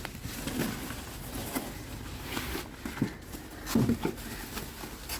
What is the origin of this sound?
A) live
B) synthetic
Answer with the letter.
A